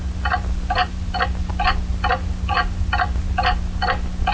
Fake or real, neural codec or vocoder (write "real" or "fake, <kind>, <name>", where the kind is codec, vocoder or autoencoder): real